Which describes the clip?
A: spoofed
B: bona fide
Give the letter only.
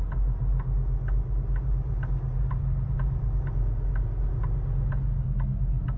B